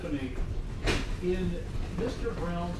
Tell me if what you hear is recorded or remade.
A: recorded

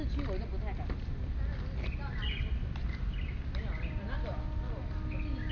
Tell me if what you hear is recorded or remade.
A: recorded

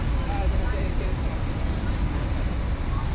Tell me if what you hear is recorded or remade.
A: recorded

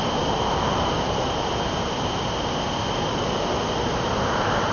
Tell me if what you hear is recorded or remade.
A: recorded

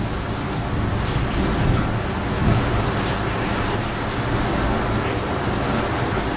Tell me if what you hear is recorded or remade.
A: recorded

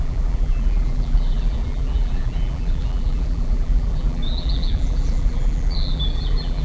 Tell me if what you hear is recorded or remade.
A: remade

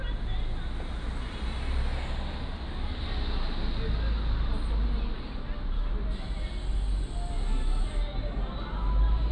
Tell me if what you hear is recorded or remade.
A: recorded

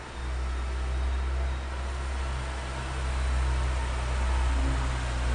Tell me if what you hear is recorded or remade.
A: recorded